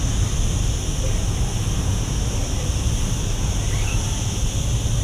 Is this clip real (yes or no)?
yes